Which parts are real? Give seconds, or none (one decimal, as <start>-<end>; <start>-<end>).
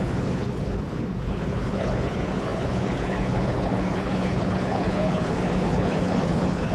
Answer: none